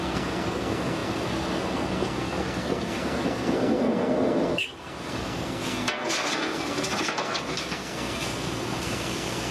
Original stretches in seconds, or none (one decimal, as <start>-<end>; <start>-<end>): none